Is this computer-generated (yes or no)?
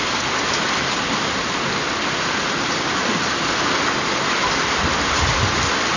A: no